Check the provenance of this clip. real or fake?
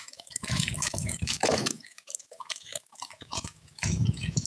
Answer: fake